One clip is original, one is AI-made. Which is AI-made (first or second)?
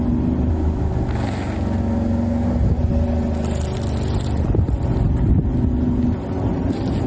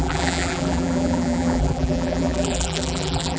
second